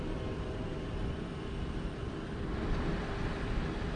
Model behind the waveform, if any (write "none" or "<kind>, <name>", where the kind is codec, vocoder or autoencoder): none